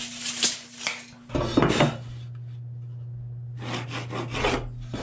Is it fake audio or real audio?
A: real